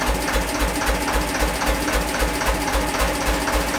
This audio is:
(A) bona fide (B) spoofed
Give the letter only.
A